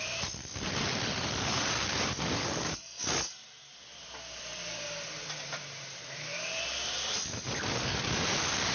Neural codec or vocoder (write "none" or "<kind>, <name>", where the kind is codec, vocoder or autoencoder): vocoder, BigVGAN v2